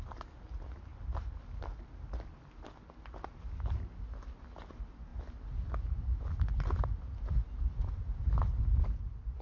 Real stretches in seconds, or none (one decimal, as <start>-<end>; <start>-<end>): 0.0-9.4